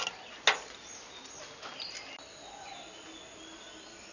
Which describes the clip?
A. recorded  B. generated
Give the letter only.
A